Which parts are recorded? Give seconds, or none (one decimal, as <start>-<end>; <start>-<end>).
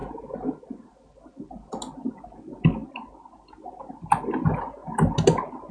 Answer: 0.0-5.7